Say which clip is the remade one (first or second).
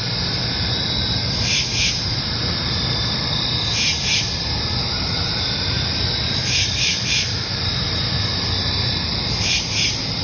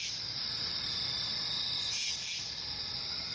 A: first